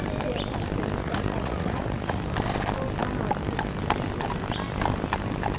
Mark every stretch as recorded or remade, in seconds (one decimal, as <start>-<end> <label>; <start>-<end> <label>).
0.0-1.0 recorded; 1.0-2.2 remade; 2.2-5.6 recorded